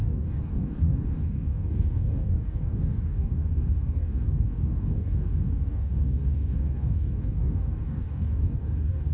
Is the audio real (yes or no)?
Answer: no